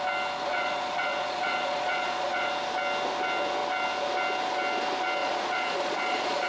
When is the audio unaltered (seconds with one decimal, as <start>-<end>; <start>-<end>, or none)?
0.0-0.5; 2.5-5.2